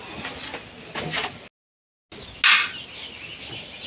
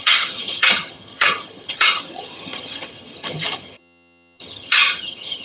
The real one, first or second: first